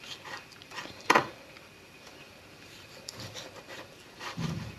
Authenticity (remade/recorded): remade